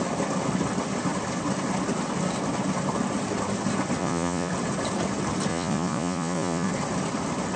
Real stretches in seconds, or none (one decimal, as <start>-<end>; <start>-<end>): 0.0-4.0; 4.5-5.5; 6.7-7.6